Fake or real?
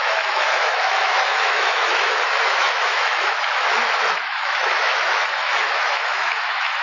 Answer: fake